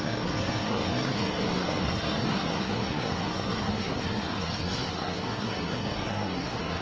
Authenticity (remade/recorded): remade